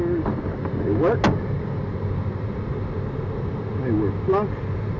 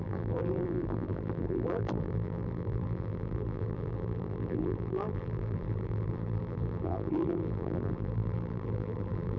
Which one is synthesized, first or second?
second